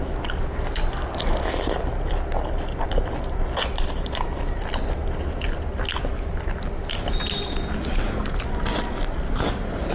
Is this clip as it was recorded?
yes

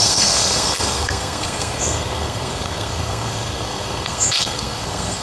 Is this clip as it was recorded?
no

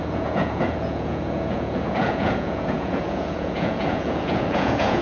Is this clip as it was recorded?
no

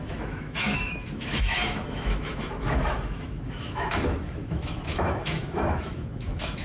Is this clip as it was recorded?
no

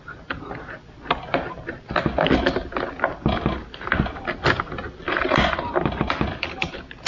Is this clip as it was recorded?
yes